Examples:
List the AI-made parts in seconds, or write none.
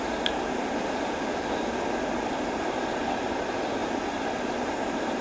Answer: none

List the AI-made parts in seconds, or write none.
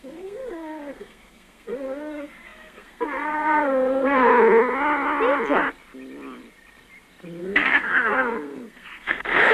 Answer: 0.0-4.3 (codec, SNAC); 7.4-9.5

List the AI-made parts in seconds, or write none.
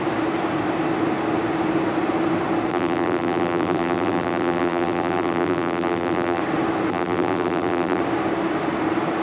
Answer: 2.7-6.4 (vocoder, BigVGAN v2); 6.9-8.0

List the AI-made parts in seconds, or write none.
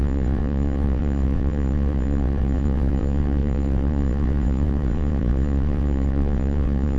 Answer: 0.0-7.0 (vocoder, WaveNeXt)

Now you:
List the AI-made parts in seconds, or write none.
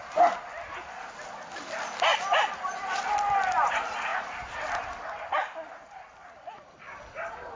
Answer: none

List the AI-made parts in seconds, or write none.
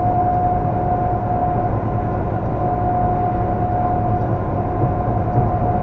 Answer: none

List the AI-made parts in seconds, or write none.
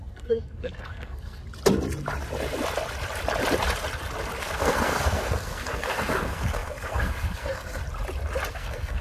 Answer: 0.0-1.4 (codec, SNAC); 4.4-7.8; 8.5-9.0